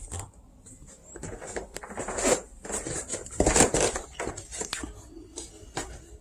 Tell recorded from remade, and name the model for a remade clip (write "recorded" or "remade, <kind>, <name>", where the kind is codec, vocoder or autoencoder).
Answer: recorded